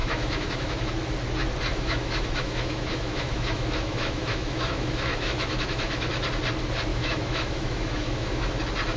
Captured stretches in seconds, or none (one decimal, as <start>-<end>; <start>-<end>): 0.9-1.7; 6.1-6.9; 8.6-9.0

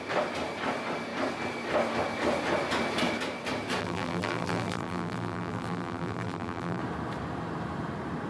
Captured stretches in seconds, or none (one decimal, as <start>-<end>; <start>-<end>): 0.0-3.8; 6.8-8.3

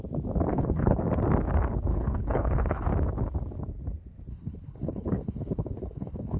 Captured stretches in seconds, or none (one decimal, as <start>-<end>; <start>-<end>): 0.0-0.5; 1.0-1.9; 2.9-4.3

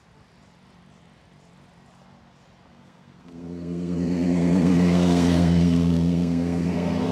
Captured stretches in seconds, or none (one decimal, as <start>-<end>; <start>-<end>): 0.0-2.7